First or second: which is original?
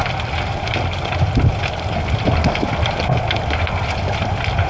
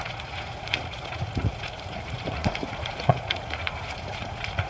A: first